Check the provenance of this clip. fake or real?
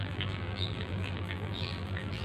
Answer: fake